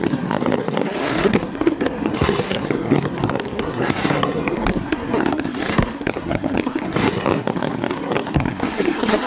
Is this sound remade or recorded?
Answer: remade